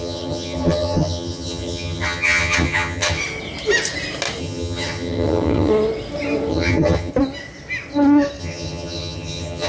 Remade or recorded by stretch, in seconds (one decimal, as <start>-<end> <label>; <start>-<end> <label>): 0.0-3.2 remade; 3.2-4.4 recorded; 4.4-5.7 remade; 5.7-6.5 recorded; 6.5-7.1 remade; 7.1-8.4 recorded; 8.4-9.7 remade